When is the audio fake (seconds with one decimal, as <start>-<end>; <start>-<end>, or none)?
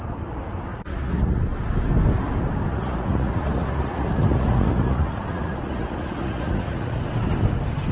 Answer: 0.7-1.4; 2.7-7.0